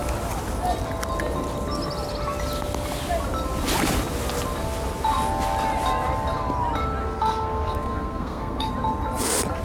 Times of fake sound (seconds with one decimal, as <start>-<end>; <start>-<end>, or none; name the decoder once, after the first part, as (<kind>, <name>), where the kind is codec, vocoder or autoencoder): 7.0-8.7 (codec, SNAC)